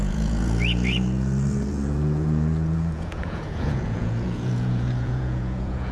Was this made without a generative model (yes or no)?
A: no